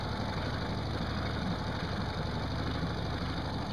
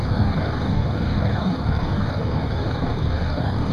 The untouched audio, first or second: first